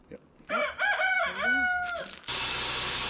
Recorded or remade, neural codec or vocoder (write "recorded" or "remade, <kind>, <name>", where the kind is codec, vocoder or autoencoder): recorded